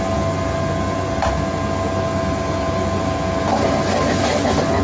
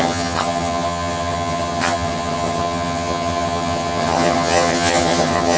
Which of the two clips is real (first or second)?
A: first